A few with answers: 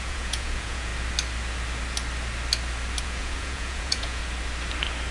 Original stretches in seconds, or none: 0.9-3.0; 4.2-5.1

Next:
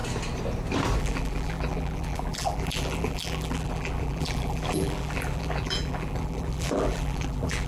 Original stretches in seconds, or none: 0.0-1.0

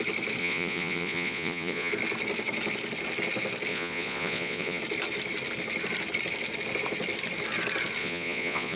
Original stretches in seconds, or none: 0.0-0.4; 1.9-3.7; 4.8-8.0

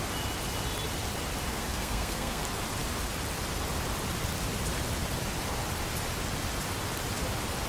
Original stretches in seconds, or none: 0.0-1.5; 2.4-7.7

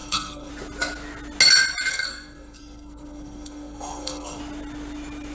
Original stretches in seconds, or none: 0.5-1.9; 4.4-5.3